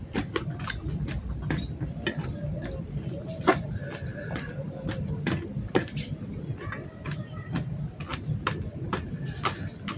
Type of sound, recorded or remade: recorded